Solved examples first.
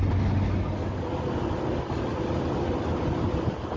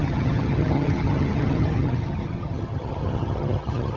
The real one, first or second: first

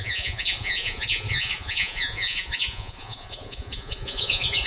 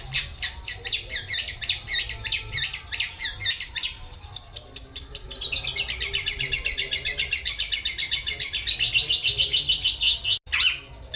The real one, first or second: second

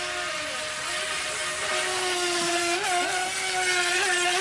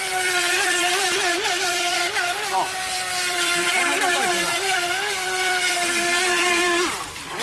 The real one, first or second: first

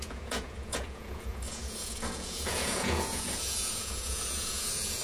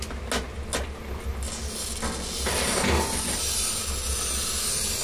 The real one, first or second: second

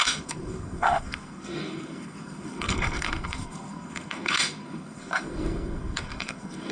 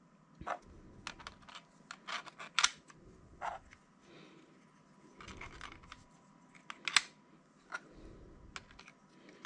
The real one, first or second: second